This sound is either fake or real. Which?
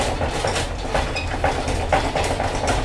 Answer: real